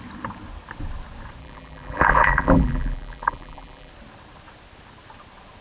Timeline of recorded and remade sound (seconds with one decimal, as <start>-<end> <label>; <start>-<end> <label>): 0.0-1.4 recorded; 1.4-3.9 remade; 3.9-5.6 recorded